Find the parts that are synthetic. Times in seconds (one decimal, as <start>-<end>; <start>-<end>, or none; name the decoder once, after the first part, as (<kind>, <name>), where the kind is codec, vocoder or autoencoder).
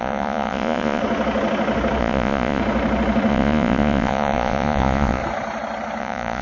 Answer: 0.0-1.0 (vocoder, Vocos); 2.0-2.6; 3.3-5.2; 6.0-6.4